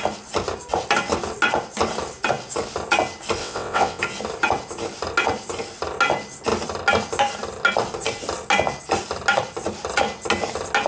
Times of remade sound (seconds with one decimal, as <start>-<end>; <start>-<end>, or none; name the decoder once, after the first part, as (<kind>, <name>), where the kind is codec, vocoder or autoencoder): 3.4-4.0 (vocoder, WaveNeXt)